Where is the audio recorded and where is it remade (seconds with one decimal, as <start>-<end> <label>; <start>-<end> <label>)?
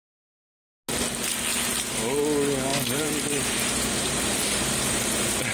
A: 0.0-2.7 recorded; 2.7-5.0 remade; 5.0-5.5 recorded